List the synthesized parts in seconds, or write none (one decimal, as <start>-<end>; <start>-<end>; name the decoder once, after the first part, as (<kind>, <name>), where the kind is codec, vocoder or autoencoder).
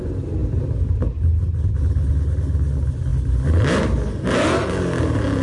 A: none